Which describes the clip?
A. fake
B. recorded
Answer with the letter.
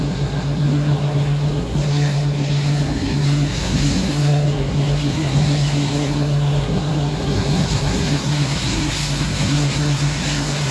A